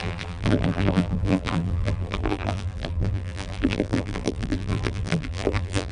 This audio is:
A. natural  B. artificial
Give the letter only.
B